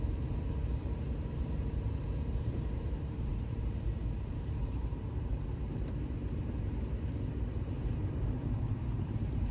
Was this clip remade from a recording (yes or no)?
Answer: yes